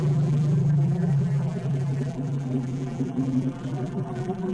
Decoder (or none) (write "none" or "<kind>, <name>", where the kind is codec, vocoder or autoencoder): vocoder, BigVGAN v2